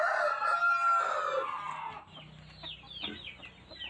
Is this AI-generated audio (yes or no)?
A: no